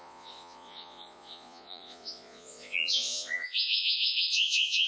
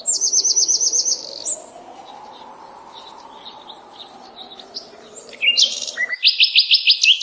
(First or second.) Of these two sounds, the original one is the second